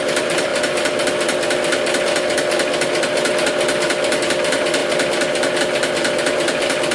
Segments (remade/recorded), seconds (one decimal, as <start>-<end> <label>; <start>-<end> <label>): 0.0-0.5 remade; 0.5-4.2 recorded; 4.2-6.9 remade